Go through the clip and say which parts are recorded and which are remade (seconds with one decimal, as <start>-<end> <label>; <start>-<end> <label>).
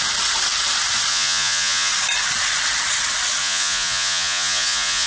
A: 0.0-1.1 recorded; 1.1-1.9 remade; 1.9-3.4 recorded; 3.4-5.1 remade